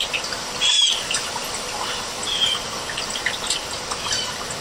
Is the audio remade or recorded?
recorded